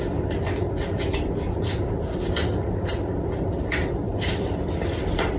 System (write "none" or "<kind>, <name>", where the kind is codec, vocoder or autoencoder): vocoder, BigVGAN v2